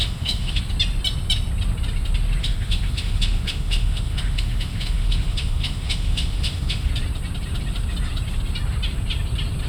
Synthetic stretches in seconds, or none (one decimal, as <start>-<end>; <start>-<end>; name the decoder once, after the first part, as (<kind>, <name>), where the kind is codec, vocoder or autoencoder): 0.0-0.6 (autoencoder, DAC-VAE); 2.4-6.9